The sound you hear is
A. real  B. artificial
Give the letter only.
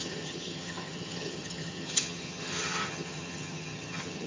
B